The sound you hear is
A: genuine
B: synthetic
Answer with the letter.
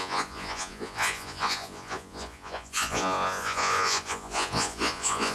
B